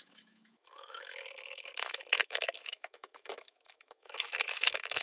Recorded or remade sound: remade